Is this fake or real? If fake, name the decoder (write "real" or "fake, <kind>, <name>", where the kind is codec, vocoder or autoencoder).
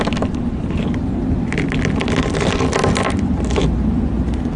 real